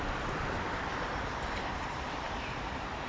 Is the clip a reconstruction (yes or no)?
yes